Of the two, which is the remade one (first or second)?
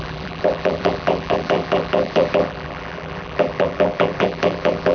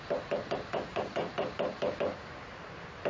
first